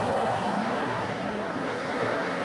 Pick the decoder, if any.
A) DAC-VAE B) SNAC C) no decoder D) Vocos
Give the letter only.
B